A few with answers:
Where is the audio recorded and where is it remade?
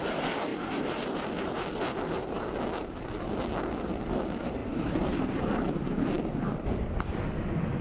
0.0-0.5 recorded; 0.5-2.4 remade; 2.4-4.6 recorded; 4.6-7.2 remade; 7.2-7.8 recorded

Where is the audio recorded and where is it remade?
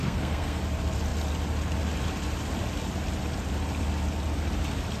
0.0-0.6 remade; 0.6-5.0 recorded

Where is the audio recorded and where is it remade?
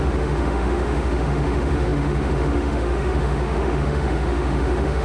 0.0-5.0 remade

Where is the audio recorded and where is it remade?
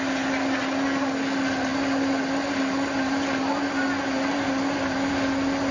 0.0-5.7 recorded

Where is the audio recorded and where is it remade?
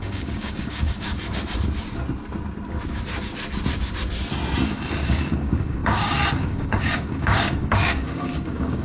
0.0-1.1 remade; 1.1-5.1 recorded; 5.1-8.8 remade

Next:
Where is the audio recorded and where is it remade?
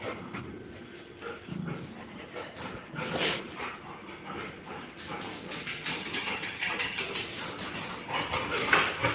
0.0-5.9 recorded; 5.9-7.0 remade; 7.0-9.1 recorded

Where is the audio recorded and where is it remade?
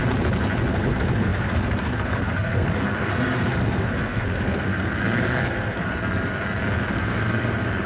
0.0-0.7 recorded; 0.7-5.9 remade; 5.9-7.0 recorded; 7.0-7.9 remade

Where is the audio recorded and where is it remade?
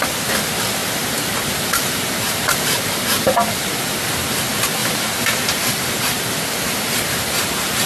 0.0-0.8 recorded; 0.8-3.7 remade; 3.7-4.8 recorded; 4.8-6.2 remade; 6.2-7.9 recorded